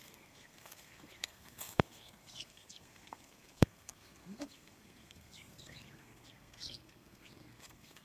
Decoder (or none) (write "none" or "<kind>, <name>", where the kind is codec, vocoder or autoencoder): codec, SNAC